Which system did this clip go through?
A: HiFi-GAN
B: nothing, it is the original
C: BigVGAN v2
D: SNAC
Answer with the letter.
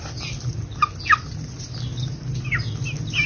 B